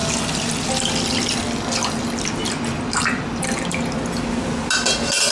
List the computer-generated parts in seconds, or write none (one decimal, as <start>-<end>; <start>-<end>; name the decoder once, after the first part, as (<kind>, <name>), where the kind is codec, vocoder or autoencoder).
none